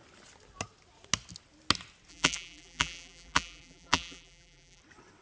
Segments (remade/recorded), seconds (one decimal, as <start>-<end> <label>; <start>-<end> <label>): 0.0-2.1 recorded; 2.1-4.8 remade; 4.8-5.2 recorded